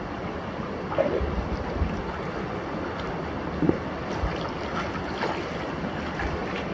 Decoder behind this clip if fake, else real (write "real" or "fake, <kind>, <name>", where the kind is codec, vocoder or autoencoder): real